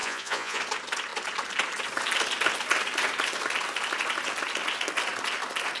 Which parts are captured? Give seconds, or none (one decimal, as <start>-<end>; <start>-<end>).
0.6-5.8